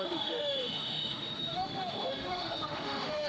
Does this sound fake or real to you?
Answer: fake